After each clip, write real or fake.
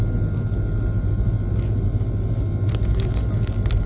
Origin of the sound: real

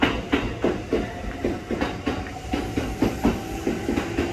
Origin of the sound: real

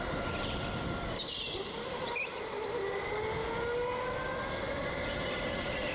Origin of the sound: real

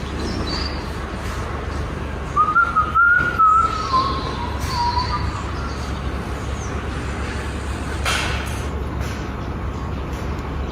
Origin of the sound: real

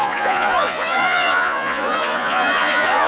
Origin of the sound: fake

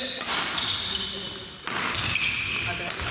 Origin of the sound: real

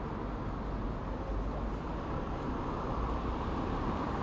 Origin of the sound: real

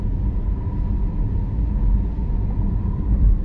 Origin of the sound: real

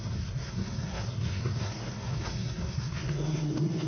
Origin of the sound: fake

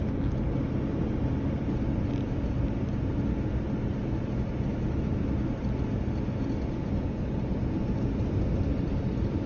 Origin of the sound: real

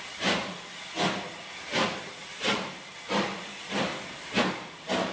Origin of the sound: real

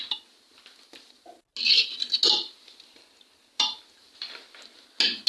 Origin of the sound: real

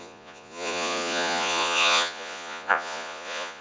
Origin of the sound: fake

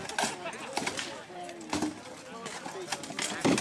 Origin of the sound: real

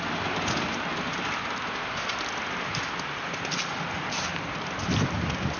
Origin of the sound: real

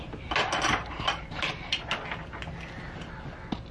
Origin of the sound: real